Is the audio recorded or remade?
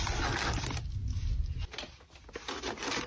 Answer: recorded